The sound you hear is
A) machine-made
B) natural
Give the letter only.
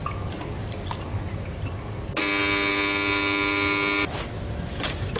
B